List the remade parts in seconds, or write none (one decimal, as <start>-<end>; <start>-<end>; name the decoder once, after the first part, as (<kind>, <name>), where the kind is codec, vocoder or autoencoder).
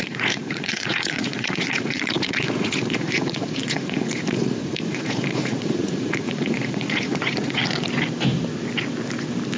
0.0-7.6 (vocoder, Vocos)